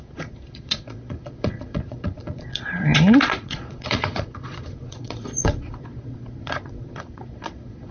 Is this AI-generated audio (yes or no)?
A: yes